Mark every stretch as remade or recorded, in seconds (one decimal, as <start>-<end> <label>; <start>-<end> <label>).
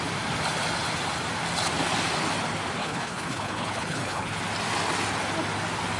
0.0-2.8 recorded; 2.8-4.4 remade; 4.4-6.0 recorded